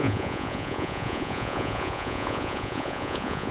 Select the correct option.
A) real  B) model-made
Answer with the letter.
B